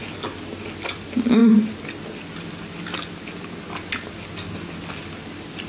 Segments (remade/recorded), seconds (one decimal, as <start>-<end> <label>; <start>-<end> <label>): 0.0-5.7 recorded